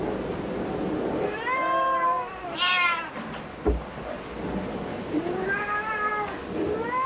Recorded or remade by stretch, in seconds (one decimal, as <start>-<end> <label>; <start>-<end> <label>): 0.0-7.1 recorded